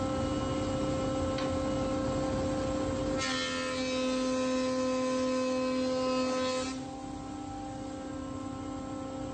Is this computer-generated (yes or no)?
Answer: no